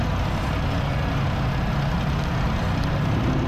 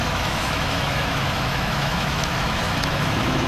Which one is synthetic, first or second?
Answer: second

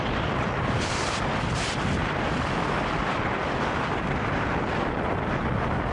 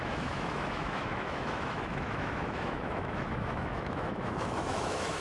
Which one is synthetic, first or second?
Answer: second